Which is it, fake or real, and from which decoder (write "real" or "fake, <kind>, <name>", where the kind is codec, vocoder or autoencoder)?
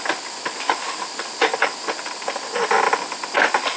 real